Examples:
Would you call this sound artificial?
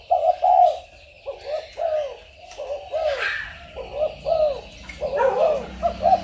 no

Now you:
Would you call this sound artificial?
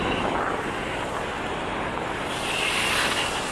no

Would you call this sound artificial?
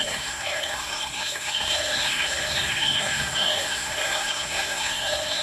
yes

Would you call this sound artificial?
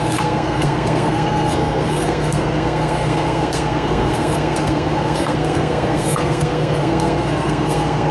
yes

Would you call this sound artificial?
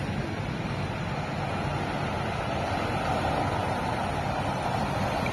no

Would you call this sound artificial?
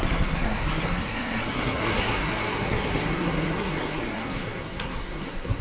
yes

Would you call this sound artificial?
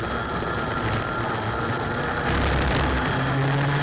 no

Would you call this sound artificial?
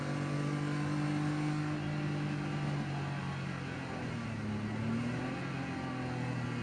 no